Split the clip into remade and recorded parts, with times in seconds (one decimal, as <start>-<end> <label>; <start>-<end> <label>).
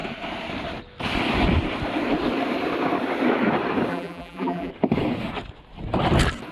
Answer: 0.0-3.9 recorded; 3.9-4.7 remade; 4.7-6.5 recorded